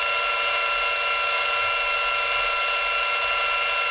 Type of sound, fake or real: real